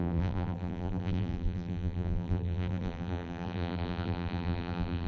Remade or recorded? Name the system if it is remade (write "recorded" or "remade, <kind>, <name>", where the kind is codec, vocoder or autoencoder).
remade, vocoder, BigVGAN v2